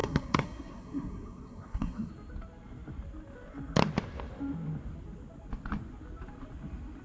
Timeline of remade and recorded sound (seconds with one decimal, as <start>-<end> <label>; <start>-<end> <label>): 0.0-2.1 remade; 2.1-7.0 recorded